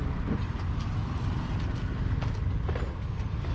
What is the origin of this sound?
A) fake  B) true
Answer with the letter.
B